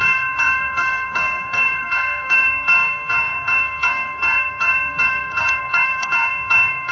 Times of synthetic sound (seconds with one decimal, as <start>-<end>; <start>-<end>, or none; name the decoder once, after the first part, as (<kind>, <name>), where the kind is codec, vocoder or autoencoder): 0.0-6.9 (codec, SNAC)